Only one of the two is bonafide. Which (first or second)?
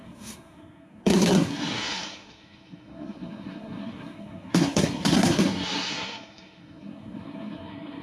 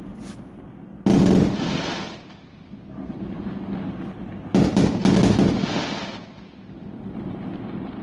second